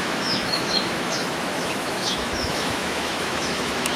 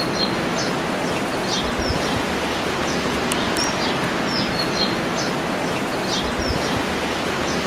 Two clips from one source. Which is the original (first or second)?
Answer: second